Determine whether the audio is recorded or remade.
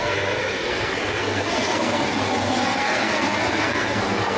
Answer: remade